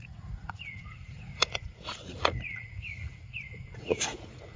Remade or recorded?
remade